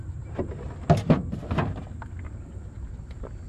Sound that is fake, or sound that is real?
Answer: real